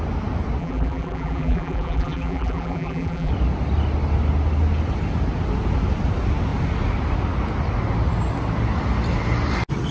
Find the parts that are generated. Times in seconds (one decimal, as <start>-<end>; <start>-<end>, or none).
0.6-3.3